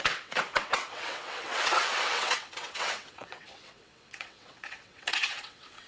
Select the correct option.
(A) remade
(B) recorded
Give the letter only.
A